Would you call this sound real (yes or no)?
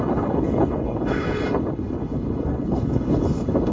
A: no